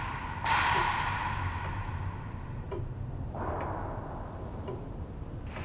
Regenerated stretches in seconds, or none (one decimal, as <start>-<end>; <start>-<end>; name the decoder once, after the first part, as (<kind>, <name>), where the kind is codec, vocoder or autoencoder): 0.8-2.6 (vocoder, BigVGAN v2)